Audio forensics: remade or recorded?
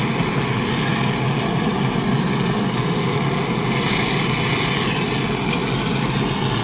recorded